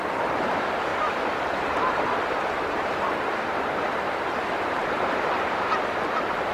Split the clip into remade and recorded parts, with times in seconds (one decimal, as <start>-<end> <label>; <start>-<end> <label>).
0.0-6.5 remade